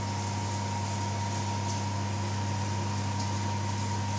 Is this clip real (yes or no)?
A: yes